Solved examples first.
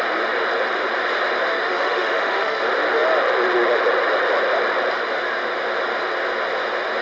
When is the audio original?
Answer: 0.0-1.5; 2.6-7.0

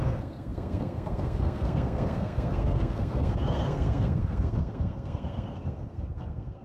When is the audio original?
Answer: none

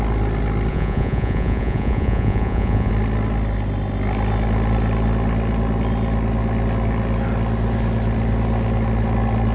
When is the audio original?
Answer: 0.0-0.7; 2.9-9.5

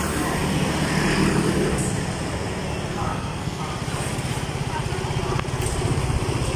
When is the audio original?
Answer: 0.0-2.9; 3.6-6.6

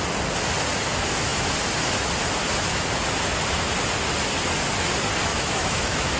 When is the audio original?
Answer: 0.0-5.3

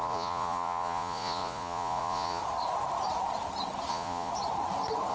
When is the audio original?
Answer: 2.4-3.9; 4.3-5.1